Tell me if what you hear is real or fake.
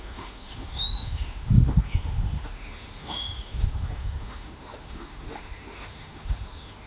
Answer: fake